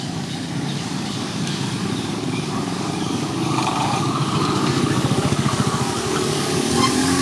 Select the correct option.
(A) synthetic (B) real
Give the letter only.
A